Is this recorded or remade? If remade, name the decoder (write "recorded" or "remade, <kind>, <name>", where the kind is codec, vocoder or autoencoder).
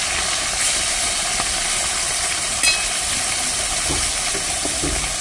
recorded